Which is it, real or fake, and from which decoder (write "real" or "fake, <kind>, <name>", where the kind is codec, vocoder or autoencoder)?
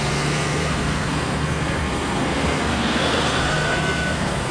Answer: fake, codec, SNAC